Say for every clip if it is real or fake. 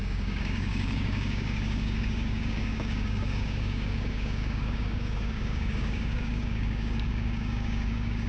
fake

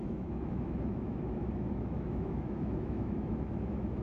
fake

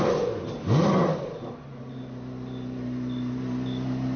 real